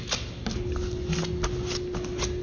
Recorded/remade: recorded